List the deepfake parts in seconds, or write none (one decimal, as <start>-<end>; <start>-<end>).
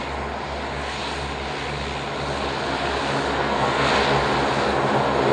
3.4-3.9